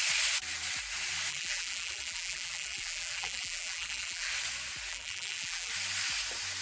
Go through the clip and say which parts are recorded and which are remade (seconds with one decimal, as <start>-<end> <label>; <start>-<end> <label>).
0.0-1.3 recorded; 1.3-4.3 remade; 4.3-4.9 recorded; 4.9-5.7 remade; 5.7-6.6 recorded